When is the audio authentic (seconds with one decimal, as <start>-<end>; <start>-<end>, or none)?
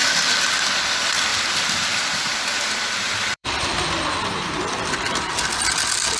0.0-0.9